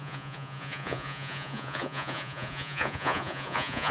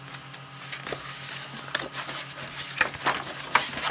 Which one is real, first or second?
second